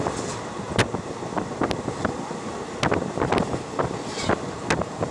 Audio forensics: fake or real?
real